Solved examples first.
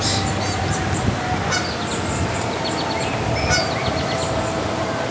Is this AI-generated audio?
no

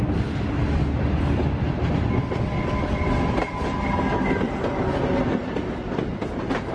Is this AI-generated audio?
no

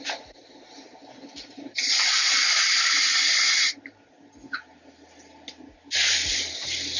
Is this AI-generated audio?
no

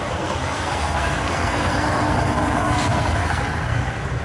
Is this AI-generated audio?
yes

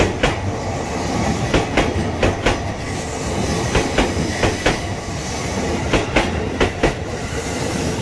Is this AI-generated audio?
no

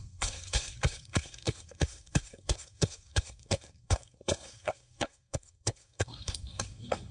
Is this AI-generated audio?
yes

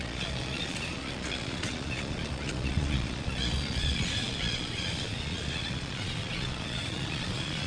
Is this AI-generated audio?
yes